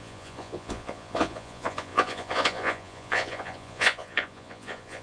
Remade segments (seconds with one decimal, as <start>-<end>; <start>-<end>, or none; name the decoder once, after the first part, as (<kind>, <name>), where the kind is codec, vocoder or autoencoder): 0.0-5.0 (vocoder, Vocos)